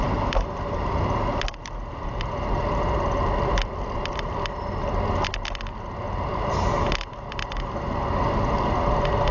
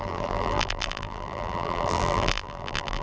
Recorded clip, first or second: first